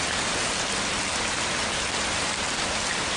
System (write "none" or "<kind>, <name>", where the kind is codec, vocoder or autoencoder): none